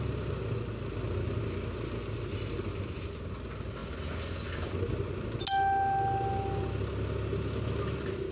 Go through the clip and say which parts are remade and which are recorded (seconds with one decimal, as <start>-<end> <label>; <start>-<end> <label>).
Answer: 0.0-8.3 recorded